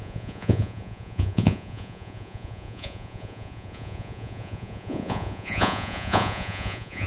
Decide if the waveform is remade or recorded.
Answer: remade